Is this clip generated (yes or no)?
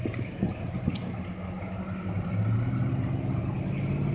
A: no